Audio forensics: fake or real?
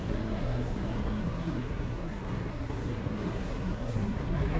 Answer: fake